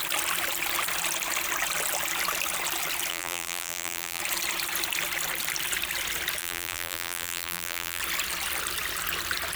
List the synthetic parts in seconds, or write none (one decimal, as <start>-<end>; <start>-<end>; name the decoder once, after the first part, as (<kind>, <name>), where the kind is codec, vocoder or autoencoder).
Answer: 3.1-4.2 (vocoder, BigVGAN v2); 6.4-8.0